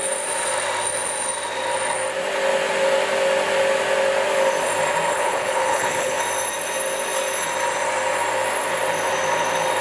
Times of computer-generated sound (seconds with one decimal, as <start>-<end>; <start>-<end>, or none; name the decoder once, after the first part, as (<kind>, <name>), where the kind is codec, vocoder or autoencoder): 5.1-6.2 (codec, HILCodec)